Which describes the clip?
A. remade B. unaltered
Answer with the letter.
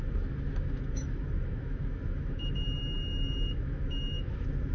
A